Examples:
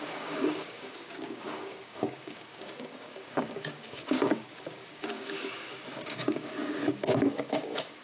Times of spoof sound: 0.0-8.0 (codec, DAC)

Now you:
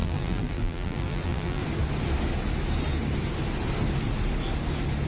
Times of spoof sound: 0.0-1.6 (vocoder, BigVGAN v2)

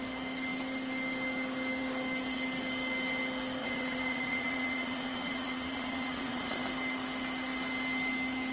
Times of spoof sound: 3.6-6.6 (vocoder, Vocos)

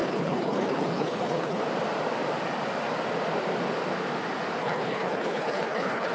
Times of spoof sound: 0.0-1.6 (codec, HILCodec); 4.6-6.1